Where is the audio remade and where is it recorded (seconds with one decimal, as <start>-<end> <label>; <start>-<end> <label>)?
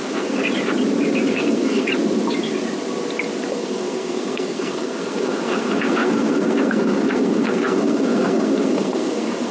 0.0-0.4 remade; 0.4-1.3 recorded; 1.3-1.9 remade; 1.9-3.5 recorded; 3.5-9.5 remade